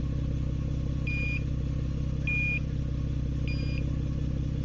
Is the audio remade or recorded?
recorded